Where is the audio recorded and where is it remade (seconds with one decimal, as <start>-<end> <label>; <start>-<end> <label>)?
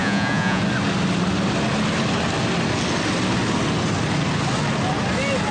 0.0-0.6 remade; 0.6-5.5 recorded